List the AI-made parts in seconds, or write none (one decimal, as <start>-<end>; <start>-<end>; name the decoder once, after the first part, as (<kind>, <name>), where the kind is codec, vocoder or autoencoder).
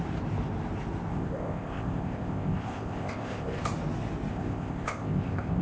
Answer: 1.1-3.6 (codec, ZipCodec); 4.3-5.6